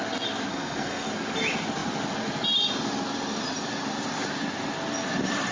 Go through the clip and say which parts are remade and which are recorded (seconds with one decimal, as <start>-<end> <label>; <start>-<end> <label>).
0.0-0.5 recorded; 0.5-1.1 remade; 1.1-5.5 recorded